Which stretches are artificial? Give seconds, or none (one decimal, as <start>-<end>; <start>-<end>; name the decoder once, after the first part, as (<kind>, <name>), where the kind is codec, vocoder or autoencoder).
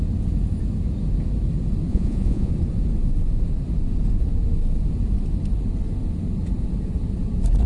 1.9-2.5 (vocoder, Vocos)